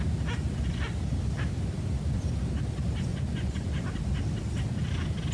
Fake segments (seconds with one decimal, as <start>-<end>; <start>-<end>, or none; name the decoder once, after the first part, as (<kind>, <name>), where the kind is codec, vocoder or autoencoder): 3.1-3.7 (vocoder, Vocos)